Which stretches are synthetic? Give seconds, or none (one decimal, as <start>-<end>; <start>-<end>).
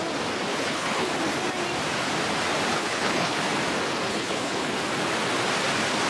0.5-1.1; 2.7-3.4; 4.1-4.7